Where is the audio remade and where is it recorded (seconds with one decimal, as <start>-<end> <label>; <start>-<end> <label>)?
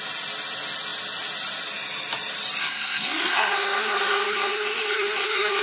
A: 0.0-2.6 recorded; 2.6-5.6 remade